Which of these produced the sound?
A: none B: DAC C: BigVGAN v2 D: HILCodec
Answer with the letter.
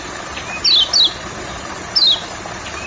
A